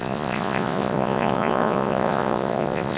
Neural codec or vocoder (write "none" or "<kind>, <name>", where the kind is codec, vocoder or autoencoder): vocoder, Vocos